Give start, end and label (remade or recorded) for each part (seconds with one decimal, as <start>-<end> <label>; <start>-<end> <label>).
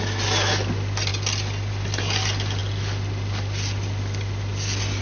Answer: 0.0-5.0 recorded